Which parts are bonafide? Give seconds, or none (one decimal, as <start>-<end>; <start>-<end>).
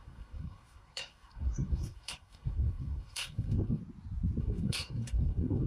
3.8-4.4